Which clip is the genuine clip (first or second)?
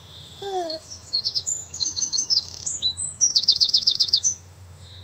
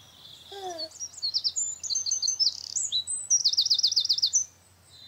second